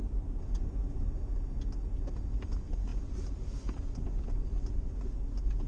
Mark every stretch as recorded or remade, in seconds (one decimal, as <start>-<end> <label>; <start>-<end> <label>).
0.0-5.7 recorded